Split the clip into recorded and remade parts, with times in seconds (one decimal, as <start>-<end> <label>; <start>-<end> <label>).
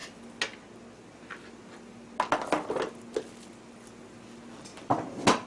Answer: 0.0-5.5 recorded